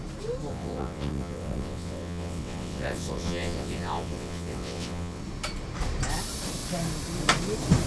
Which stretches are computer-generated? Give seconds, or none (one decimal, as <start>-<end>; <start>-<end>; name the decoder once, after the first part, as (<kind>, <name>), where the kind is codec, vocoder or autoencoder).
0.5-5.2 (vocoder, WaveNeXt)